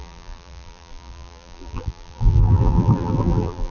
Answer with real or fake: fake